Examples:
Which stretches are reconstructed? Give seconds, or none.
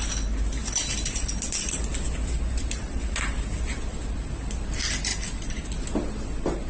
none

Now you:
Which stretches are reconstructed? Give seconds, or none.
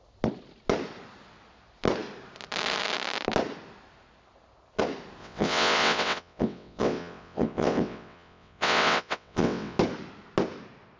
5.2-9.8 (vocoder, WaveNeXt)